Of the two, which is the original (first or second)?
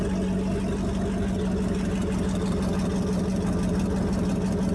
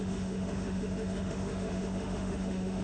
first